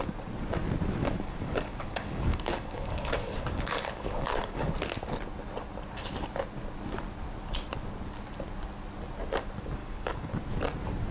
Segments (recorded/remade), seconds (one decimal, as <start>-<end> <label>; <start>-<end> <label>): 0.0-1.0 recorded; 1.0-4.7 remade; 4.7-9.8 recorded; 9.8-10.3 remade; 10.3-11.1 recorded